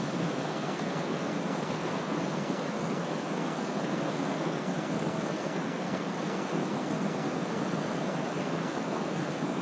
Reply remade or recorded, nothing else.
remade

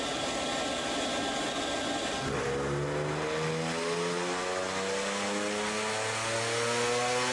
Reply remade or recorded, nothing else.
recorded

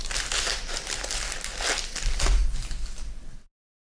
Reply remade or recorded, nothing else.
recorded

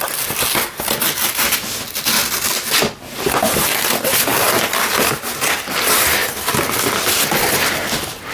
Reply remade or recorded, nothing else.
recorded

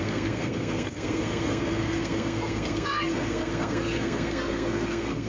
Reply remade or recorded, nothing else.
remade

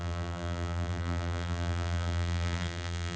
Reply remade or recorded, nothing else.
remade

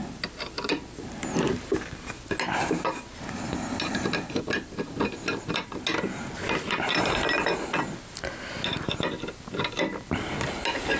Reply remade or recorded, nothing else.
recorded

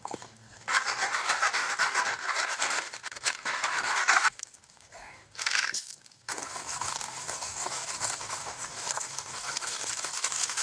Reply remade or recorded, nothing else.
remade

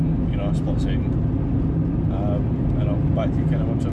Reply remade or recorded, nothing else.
recorded